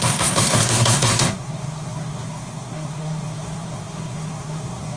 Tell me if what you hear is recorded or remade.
remade